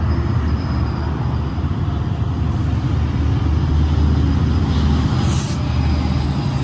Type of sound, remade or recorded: recorded